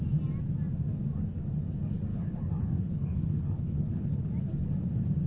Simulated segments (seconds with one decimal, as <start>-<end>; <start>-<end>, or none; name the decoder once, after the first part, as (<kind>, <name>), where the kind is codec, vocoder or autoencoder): 2.1-4.3 (codec, HILCodec)